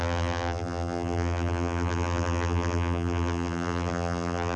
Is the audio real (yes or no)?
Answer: no